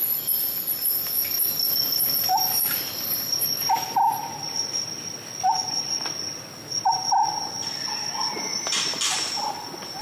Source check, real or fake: real